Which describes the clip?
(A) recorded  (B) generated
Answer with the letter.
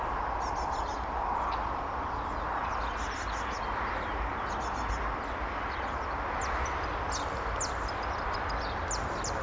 A